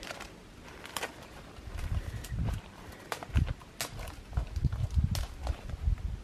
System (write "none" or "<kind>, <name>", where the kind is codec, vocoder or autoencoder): none